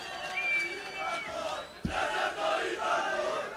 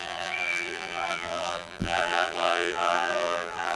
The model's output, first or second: second